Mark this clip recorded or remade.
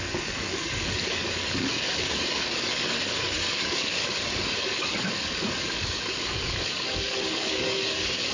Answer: remade